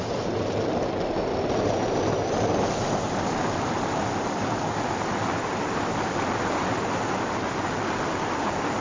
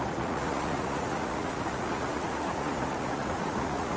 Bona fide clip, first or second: first